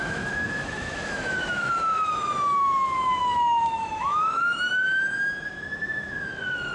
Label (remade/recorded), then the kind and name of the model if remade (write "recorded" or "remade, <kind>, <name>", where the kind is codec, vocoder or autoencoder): remade, autoencoder, DAC-VAE